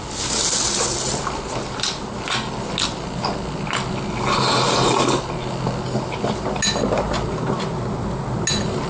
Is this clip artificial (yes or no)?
no